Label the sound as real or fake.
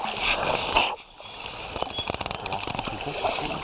real